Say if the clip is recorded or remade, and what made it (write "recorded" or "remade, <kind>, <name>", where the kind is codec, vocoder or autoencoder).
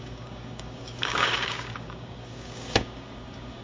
remade, codec, DAC